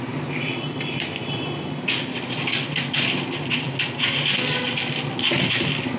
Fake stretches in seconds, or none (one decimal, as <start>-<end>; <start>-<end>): none